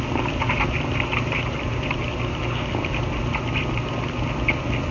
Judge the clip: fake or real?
real